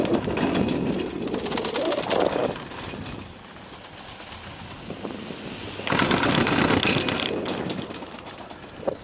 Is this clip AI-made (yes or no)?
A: no